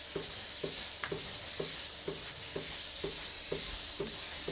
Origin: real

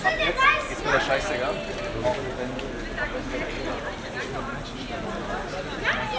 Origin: real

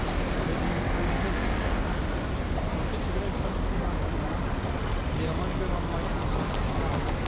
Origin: real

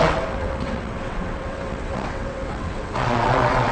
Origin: fake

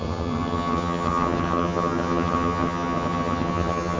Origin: fake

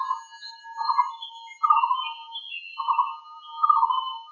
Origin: real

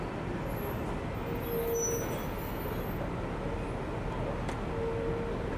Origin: real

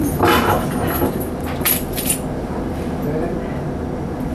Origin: real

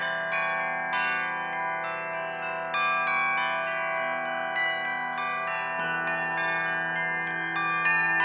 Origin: real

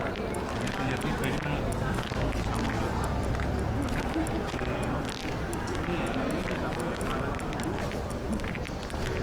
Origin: real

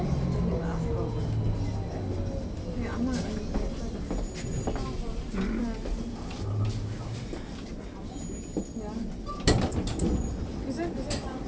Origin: real